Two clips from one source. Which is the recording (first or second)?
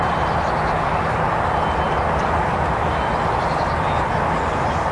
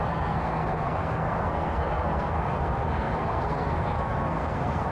first